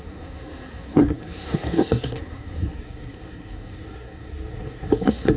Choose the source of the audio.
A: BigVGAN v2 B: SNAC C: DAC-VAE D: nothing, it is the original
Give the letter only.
B